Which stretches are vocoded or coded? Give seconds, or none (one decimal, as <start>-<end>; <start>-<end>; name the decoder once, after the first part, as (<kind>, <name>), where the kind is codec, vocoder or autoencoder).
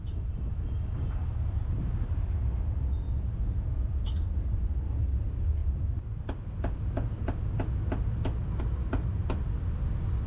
none